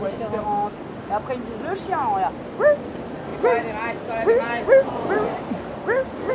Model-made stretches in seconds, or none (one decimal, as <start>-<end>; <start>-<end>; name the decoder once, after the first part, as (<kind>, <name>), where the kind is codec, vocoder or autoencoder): 0.0-0.7 (autoencoder, DAC-VAE)